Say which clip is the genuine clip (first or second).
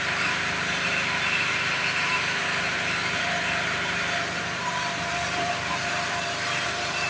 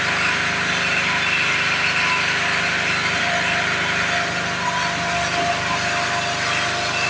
second